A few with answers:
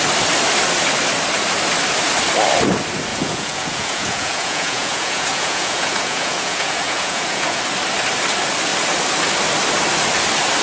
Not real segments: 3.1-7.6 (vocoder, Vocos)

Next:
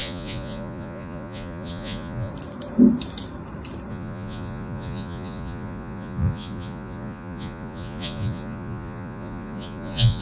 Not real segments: 0.0-2.3 (vocoder, Vocos); 3.9-10.2

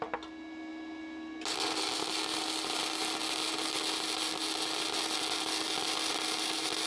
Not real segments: none

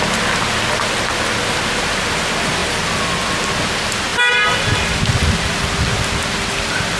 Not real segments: none